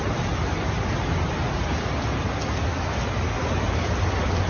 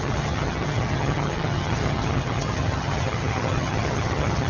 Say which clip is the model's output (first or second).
second